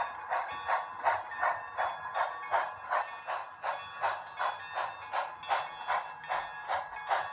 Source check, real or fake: real